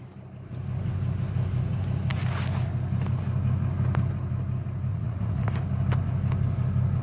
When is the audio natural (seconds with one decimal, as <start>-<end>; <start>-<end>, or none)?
0.0-4.9; 5.5-7.0